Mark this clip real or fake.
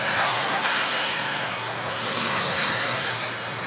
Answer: fake